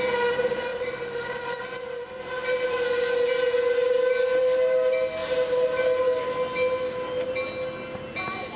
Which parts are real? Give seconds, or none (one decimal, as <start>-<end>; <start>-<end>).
0.0-0.7; 1.7-5.2; 6.0-8.6